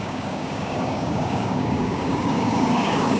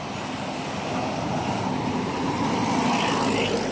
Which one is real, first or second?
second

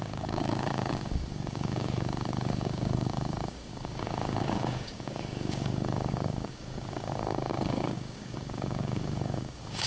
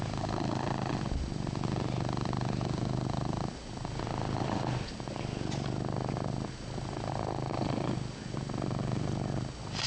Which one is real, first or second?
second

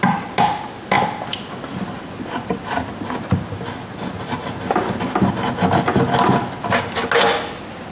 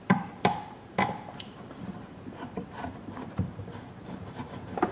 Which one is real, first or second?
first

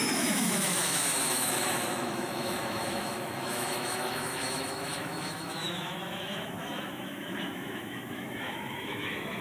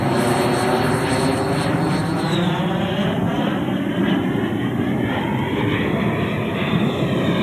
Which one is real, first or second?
second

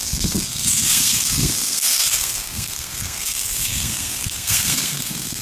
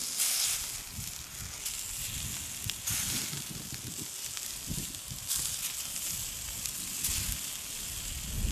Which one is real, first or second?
second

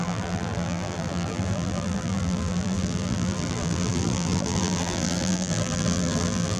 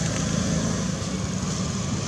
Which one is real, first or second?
second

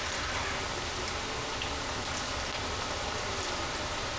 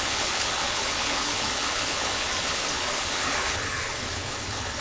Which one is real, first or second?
first